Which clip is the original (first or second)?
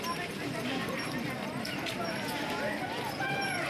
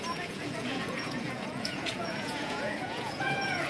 first